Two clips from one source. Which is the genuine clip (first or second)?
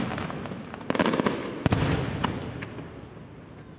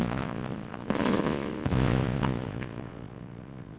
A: first